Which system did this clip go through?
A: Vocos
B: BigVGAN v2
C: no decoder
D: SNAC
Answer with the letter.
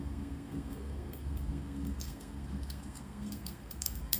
D